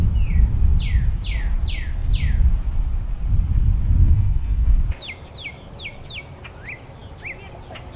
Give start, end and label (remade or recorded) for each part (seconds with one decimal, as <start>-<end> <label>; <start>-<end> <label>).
0.0-4.0 recorded; 4.0-4.8 remade; 4.8-8.0 recorded